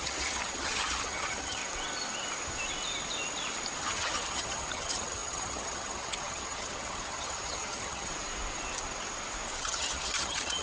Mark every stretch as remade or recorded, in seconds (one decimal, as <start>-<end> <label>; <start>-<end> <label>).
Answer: 0.0-1.6 remade; 1.6-3.8 recorded; 3.8-8.1 remade; 8.1-9.6 recorded; 9.6-10.6 remade